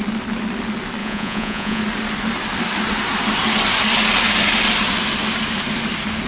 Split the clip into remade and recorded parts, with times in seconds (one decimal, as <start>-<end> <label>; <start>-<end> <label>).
0.0-1.0 recorded; 1.0-1.8 remade; 1.8-6.3 recorded